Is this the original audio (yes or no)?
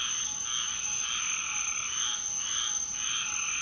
yes